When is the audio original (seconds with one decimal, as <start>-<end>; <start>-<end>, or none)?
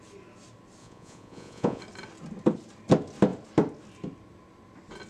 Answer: 0.0-0.8; 1.8-5.1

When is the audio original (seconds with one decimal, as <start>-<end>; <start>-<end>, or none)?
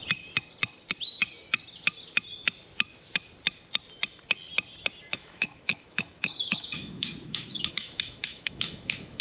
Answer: 0.0-5.1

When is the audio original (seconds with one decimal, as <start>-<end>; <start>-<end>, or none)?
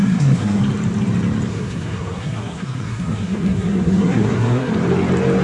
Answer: 0.6-1.5; 4.7-5.4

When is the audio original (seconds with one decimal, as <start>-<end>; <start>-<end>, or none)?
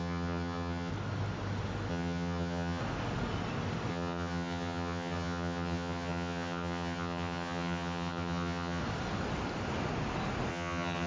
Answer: 0.9-1.9; 2.8-3.9; 8.8-10.5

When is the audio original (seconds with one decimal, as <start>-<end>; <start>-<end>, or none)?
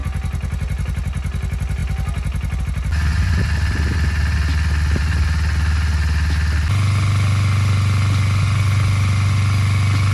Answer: 0.0-10.1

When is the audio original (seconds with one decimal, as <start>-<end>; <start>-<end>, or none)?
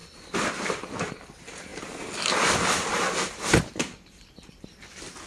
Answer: 0.0-1.7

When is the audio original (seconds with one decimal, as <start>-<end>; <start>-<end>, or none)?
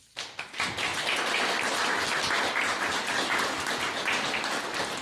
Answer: 0.0-5.0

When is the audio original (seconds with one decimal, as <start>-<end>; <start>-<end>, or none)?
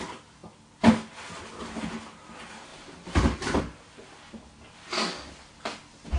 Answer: 0.0-2.7; 3.6-6.2